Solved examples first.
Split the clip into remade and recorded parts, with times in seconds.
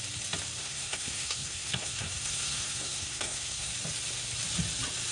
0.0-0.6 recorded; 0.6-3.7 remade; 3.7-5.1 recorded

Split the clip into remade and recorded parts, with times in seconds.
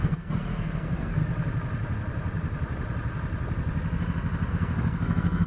0.0-1.2 remade; 1.2-4.5 recorded; 4.5-5.5 remade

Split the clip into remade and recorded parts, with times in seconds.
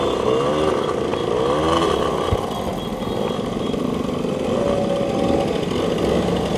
0.0-6.6 recorded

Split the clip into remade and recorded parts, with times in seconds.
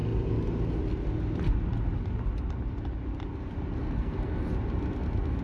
0.0-3.8 recorded; 3.8-4.5 remade; 4.5-5.4 recorded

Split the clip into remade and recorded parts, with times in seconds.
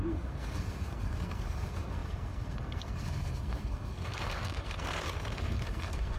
0.0-6.2 remade